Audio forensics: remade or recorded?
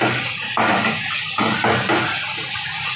recorded